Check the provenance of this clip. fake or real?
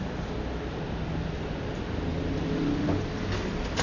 real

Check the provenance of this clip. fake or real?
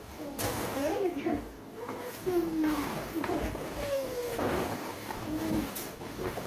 fake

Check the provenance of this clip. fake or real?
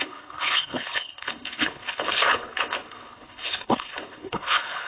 fake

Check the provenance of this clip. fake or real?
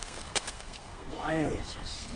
fake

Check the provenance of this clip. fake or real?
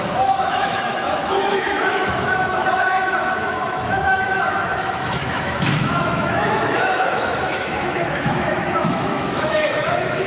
fake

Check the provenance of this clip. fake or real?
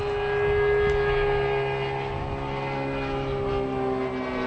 real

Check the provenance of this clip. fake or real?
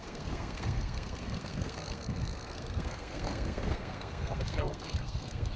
fake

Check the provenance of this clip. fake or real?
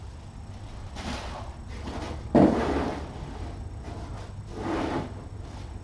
real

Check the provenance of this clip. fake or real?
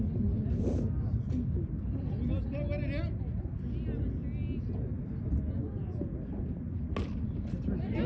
real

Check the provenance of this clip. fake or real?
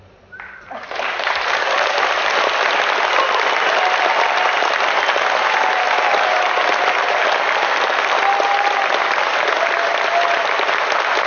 real